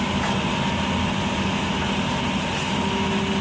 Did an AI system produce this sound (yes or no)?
no